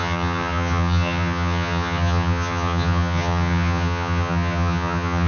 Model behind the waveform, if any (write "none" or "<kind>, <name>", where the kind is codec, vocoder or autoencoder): vocoder, HiFi-GAN